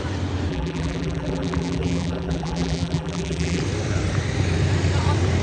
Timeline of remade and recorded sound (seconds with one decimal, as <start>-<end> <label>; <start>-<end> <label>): 0.0-0.5 recorded; 0.5-3.6 remade; 3.6-5.4 recorded